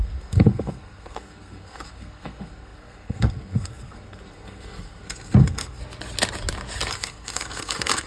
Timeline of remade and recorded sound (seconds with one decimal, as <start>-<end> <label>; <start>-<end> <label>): 0.0-5.8 remade; 5.8-6.9 recorded; 6.9-8.1 remade